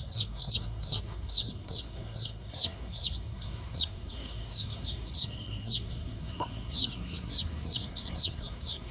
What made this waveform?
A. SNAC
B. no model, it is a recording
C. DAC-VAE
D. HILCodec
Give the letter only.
A